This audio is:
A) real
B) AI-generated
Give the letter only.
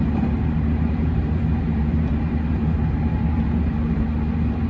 B